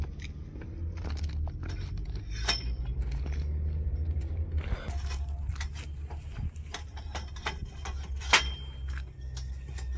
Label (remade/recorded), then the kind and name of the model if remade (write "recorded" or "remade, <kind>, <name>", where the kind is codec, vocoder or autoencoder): recorded